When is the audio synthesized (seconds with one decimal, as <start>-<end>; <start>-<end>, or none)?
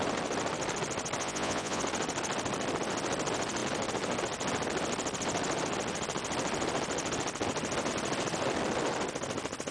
1.2-1.8